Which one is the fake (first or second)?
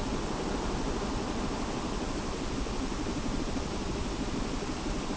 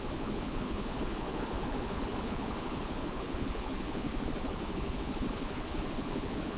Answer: second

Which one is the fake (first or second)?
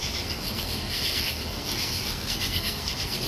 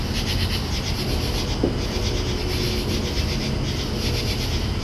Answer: first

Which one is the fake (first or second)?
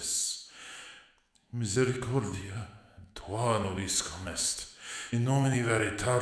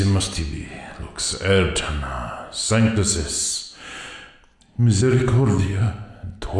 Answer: first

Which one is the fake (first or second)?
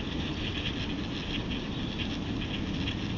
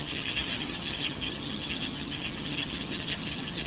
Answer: second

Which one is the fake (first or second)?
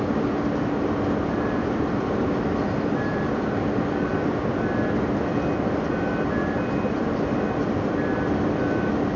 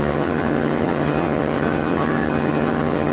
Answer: second